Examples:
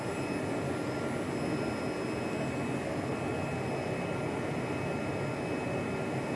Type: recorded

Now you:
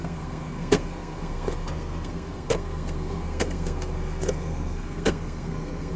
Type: remade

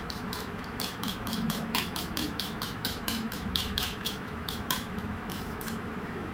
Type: remade